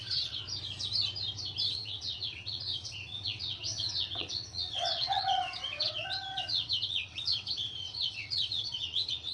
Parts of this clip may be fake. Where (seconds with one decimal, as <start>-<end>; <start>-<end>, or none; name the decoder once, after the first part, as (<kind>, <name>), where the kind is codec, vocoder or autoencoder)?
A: 0.0-0.4 (vocoder, WaveNeXt); 1.7-9.3